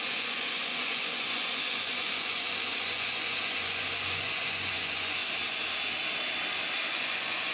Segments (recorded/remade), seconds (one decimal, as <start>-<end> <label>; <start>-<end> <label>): 0.0-5.2 remade; 5.2-6.9 recorded; 6.9-7.5 remade